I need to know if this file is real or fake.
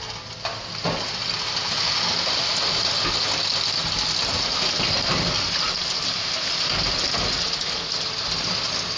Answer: real